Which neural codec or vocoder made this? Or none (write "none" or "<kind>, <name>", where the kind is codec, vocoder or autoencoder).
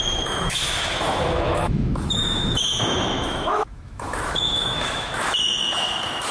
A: autoencoder, DAC-VAE